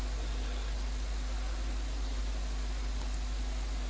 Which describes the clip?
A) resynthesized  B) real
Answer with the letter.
B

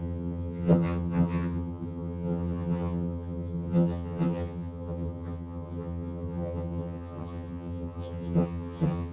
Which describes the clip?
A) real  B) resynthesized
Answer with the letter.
B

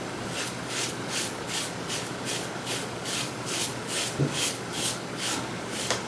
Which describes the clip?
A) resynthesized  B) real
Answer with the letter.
A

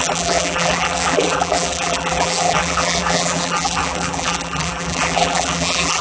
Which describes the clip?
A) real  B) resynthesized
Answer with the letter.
B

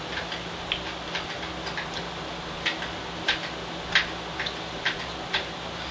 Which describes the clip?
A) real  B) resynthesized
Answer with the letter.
A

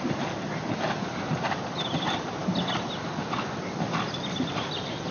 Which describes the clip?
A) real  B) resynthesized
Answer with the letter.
A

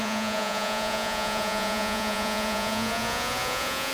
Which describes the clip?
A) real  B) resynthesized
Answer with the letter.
B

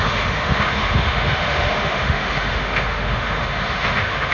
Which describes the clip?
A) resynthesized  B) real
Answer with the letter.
A